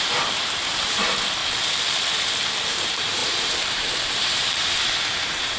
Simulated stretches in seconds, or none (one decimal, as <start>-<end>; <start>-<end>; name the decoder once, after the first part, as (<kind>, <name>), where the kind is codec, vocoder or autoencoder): 0.0-1.4 (vocoder, BigVGAN v2); 2.6-5.6